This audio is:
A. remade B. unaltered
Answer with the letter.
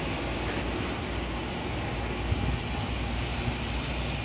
B